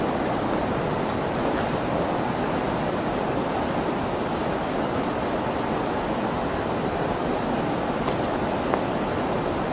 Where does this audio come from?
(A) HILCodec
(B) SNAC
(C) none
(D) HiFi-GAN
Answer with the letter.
C